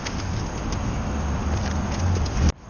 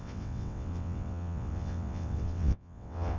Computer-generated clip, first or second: second